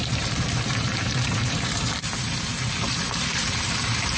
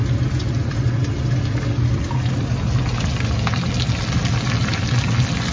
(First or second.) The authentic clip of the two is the second